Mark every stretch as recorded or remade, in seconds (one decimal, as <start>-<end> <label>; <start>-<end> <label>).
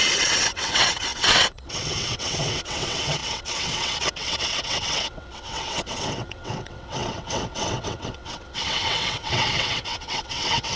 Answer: 0.0-10.8 remade